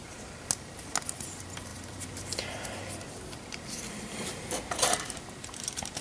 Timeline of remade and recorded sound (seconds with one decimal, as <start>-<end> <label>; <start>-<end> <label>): 0.0-6.0 recorded